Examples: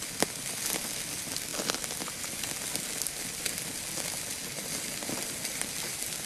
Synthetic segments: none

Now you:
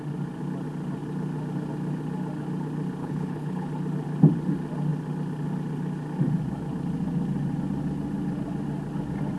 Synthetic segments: 3.0-3.7 (codec, HILCodec)